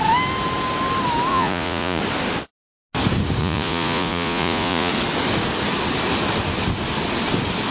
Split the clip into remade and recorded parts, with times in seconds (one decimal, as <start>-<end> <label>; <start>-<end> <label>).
0.0-1.3 recorded; 1.3-2.0 remade; 2.0-3.4 recorded; 3.4-4.9 remade; 4.9-7.7 recorded